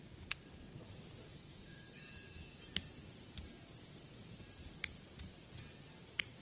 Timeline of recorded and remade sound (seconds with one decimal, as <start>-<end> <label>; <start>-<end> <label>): 0.0-1.3 recorded; 1.3-2.6 remade; 2.6-6.4 recorded